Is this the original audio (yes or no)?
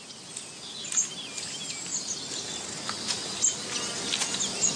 yes